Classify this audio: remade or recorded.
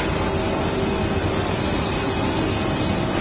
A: recorded